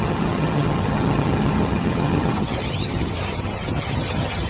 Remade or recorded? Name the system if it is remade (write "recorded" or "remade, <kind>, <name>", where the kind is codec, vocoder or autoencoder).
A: remade, vocoder, HiFi-GAN